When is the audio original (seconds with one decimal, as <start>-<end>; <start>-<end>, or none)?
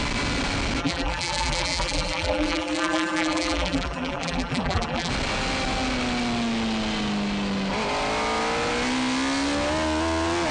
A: 0.0-0.8; 5.1-10.5